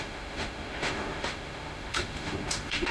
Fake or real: fake